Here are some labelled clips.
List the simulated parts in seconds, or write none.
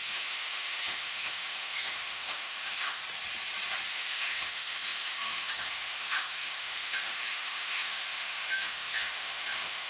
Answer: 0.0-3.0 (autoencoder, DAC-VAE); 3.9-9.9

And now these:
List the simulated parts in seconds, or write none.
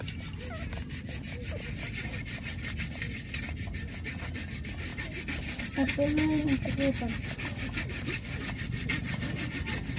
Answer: none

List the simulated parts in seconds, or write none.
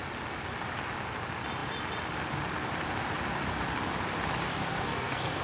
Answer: 4.5-5.4 (codec, SNAC)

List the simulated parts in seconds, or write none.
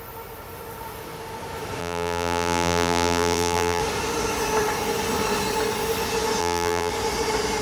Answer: 1.8-3.8 (vocoder, BigVGAN v2); 6.4-6.9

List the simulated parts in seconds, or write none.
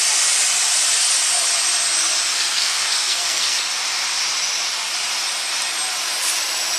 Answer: 2.3-3.6 (codec, SNAC)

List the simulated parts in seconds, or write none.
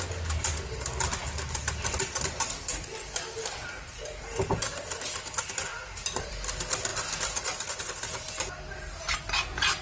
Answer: 1.2-4.5 (vocoder, BigVGAN v2); 5.7-6.3; 6.9-7.8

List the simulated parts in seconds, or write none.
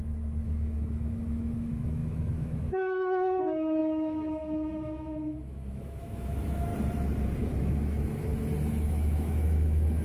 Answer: 0.0-6.7 (autoencoder, DAC-VAE); 7.6-8.3; 8.8-10.0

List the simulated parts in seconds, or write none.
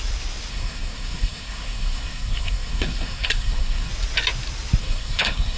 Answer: 0.5-3.9 (codec, SNAC); 4.8-5.6